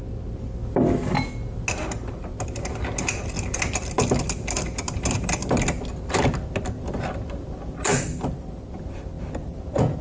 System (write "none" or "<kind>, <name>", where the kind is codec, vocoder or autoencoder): none